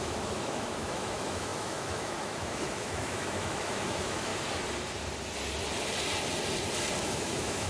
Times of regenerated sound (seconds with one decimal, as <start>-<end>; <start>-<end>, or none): 0.0-4.3; 7.0-7.7